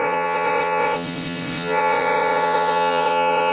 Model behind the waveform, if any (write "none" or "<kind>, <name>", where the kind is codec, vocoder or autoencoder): vocoder, WaveNeXt